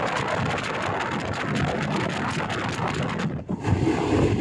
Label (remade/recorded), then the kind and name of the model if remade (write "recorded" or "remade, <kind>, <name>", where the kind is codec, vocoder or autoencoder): recorded